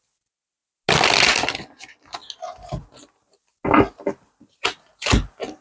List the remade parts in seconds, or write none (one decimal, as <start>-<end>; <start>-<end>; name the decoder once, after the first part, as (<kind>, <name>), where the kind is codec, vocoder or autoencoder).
none